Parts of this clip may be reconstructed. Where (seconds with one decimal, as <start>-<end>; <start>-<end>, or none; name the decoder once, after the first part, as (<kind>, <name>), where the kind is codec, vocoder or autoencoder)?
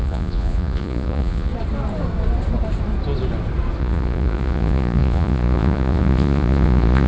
0.0-1.5 (vocoder, Vocos); 3.8-7.1